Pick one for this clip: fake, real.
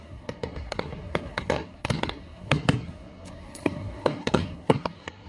fake